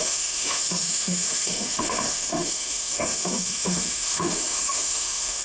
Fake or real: fake